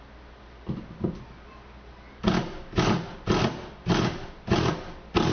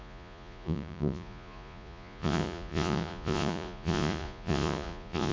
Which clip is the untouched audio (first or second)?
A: first